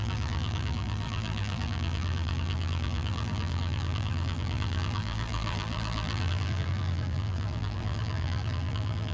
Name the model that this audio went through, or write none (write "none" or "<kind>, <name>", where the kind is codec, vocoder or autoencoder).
vocoder, BigVGAN v2